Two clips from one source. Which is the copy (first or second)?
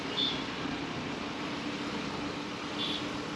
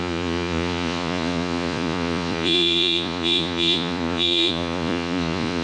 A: second